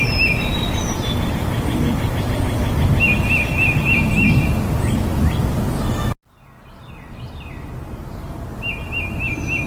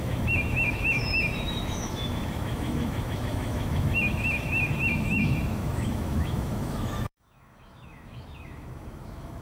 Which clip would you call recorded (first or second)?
first